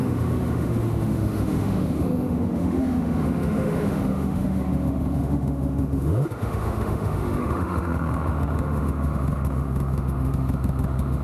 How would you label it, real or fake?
fake